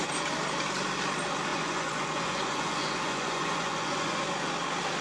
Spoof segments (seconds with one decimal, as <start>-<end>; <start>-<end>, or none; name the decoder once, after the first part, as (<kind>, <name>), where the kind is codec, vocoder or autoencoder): 1.5-4.2 (vocoder, Vocos)